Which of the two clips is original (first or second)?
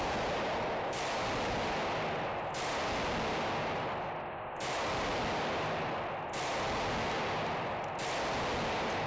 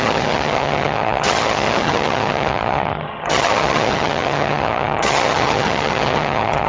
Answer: first